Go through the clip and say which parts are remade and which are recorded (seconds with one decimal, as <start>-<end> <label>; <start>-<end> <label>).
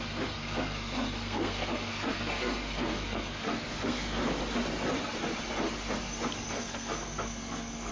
0.0-4.2 remade; 4.2-6.5 recorded; 6.5-7.9 remade